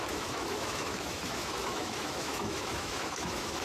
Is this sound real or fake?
fake